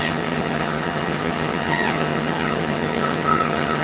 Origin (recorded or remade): remade